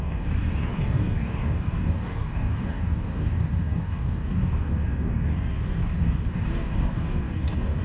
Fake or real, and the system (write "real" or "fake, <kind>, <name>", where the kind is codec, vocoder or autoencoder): fake, codec, DAC